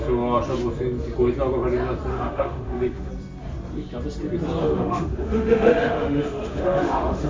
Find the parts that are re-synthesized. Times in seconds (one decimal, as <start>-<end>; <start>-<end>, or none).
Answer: 2.1-3.1; 4.6-7.3